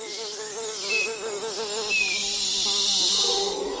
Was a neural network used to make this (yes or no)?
no